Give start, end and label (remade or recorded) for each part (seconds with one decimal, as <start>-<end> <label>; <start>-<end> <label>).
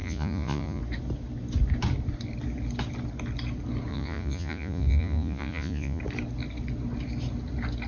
0.0-0.8 remade; 0.8-3.9 recorded; 3.9-6.0 remade; 6.0-7.9 recorded